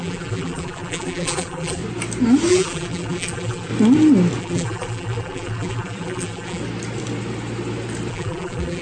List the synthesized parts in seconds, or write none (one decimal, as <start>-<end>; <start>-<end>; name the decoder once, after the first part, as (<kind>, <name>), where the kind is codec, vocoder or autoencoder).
0.0-1.8 (vocoder, BigVGAN v2); 2.5-3.7; 4.4-6.6; 8.1-8.8